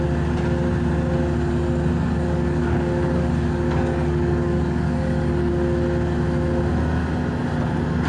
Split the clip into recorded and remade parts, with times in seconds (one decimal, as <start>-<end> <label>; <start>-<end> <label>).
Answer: 0.0-1.9 recorded; 1.9-5.5 remade; 5.5-8.1 recorded